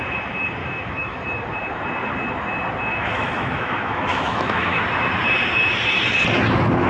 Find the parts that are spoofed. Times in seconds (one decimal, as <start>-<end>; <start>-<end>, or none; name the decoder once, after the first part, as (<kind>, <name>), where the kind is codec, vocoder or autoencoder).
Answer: 0.6-1.2 (autoencoder, DAC-VAE); 2.9-4.8